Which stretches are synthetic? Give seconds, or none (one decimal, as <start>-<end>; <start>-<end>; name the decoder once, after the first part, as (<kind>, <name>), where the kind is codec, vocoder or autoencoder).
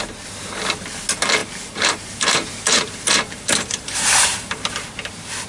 1.4-4.7 (vocoder, BigVGAN v2)